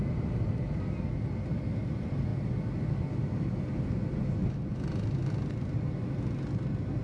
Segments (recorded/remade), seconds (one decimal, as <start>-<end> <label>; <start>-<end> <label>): 0.0-7.0 recorded